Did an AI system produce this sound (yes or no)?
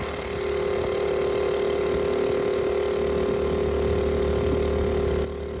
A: no